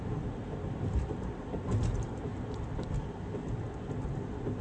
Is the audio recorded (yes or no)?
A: yes